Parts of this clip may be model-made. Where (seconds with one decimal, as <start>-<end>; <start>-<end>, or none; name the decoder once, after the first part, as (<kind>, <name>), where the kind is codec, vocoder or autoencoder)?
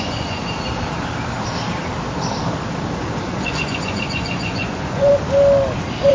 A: 0.0-0.4 (vocoder, Vocos); 3.3-5.1